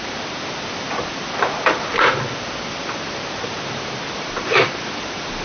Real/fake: fake